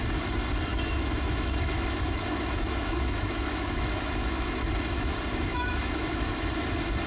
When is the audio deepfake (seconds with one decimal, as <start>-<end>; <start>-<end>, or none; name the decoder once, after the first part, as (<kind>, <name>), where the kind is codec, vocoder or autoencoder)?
0.7-4.7 (autoencoder, DAC-VAE); 5.5-6.5